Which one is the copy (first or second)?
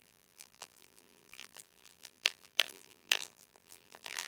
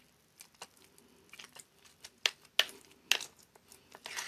first